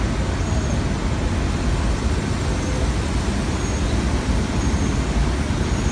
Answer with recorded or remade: recorded